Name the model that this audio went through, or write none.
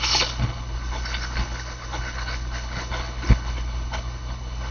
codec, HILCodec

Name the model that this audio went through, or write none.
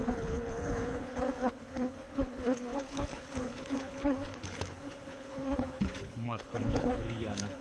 codec, HILCodec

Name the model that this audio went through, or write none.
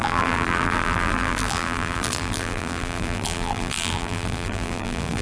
vocoder, BigVGAN v2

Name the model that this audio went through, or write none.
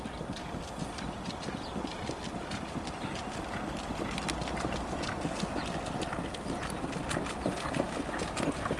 none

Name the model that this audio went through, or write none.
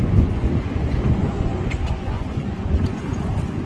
vocoder, Vocos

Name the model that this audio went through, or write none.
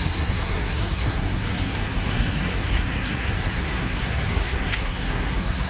codec, SNAC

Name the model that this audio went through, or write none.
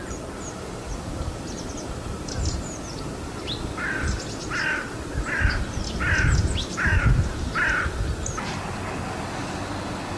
none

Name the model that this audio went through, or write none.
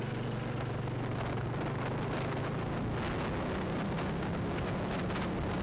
none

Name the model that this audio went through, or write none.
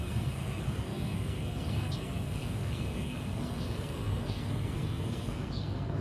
codec, SNAC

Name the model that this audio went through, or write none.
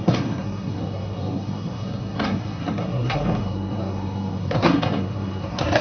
codec, SNAC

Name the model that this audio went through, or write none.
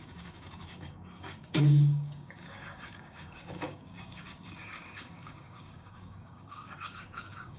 codec, DAC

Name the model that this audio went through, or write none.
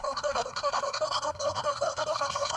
codec, SNAC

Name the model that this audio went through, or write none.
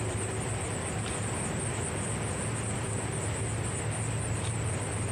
none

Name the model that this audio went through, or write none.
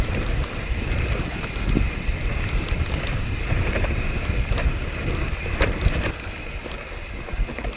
none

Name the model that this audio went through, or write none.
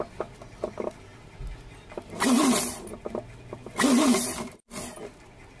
none